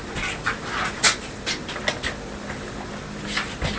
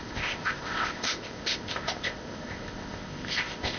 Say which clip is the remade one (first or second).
second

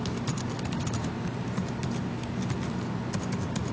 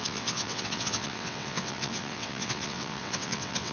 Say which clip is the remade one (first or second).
second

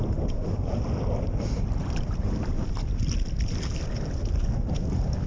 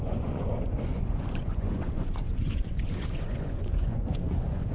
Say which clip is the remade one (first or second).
second